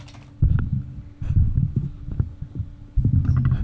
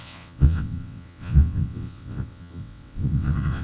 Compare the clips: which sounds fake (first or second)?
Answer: second